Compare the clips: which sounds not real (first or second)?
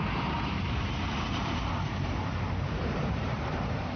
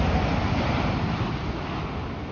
first